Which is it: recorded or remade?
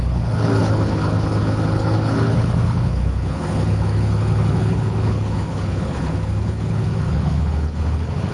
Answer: remade